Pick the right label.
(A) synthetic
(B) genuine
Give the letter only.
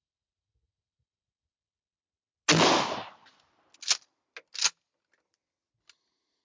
B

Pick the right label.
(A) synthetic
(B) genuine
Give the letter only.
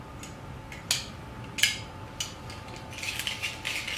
B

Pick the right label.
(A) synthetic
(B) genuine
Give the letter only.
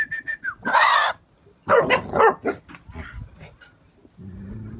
B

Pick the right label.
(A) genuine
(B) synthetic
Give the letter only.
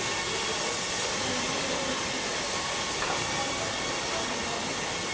A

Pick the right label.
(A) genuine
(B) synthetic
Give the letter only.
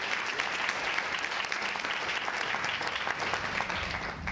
A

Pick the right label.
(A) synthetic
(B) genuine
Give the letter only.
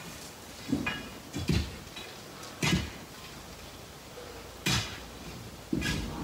B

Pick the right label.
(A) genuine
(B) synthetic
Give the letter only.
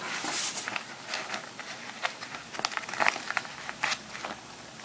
A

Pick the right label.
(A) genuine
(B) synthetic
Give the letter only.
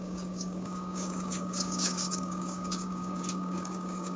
B